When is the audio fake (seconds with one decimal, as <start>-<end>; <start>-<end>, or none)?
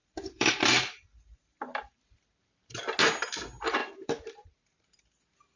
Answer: 0.0-1.6; 3.8-5.0